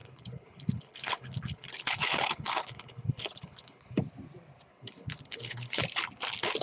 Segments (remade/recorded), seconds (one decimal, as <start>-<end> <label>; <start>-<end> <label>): 0.0-4.0 remade; 4.0-4.7 recorded; 4.7-5.8 remade; 5.8-6.6 recorded